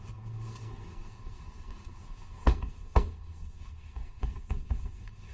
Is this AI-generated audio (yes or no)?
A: yes